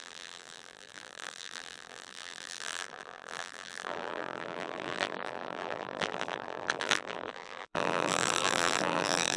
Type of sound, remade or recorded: remade